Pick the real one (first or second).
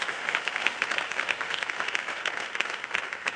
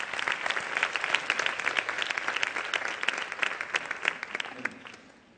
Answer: second